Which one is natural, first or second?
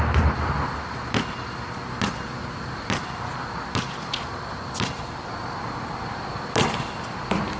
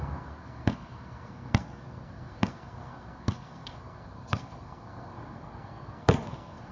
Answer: first